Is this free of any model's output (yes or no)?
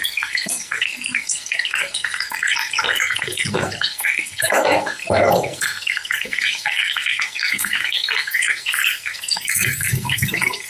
no